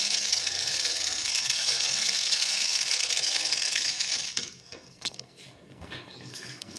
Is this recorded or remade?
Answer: remade